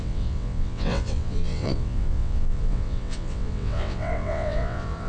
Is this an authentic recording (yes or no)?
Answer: no